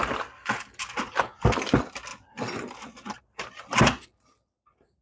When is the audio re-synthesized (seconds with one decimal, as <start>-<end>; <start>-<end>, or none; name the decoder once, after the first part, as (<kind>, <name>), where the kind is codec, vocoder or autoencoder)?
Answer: none